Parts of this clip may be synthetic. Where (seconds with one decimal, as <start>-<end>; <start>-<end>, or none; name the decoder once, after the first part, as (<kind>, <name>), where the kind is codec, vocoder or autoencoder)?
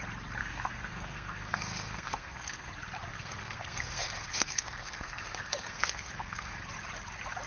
0.4-2.7 (codec, SNAC); 3.1-6.7